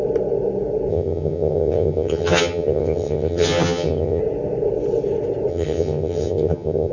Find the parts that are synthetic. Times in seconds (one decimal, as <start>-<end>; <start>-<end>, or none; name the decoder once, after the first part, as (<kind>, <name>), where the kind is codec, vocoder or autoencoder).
0.9-4.2 (vocoder, HiFi-GAN); 5.5-6.9